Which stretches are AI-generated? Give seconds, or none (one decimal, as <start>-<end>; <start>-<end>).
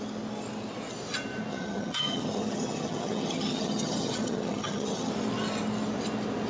1.5-5.1